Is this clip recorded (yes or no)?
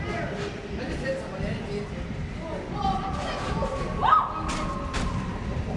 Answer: yes